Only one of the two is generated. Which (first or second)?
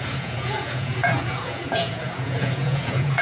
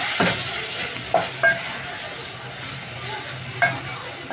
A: first